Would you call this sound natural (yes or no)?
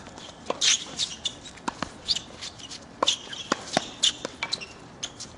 yes